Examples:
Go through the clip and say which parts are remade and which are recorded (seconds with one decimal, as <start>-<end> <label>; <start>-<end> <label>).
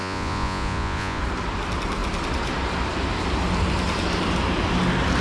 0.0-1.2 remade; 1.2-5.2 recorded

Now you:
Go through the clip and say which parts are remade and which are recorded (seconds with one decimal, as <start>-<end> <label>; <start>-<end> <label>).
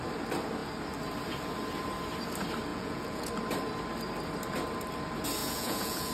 0.0-2.7 recorded; 2.7-3.3 remade; 3.3-5.4 recorded; 5.4-6.1 remade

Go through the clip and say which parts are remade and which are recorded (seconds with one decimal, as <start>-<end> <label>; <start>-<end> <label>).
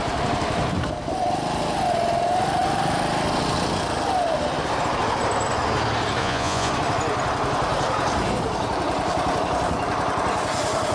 0.0-6.2 recorded; 6.2-6.7 remade; 6.7-10.9 recorded